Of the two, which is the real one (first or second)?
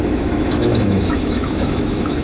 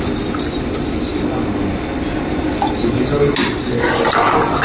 second